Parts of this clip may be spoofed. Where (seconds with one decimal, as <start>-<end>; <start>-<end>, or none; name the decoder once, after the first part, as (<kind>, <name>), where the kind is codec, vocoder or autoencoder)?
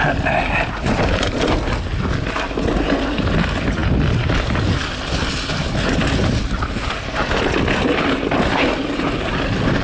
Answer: none